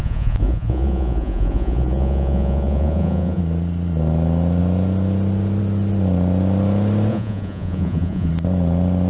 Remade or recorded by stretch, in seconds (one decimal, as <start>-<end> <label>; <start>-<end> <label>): 0.0-3.4 remade; 3.4-7.1 recorded; 7.1-8.3 remade; 8.3-9.1 recorded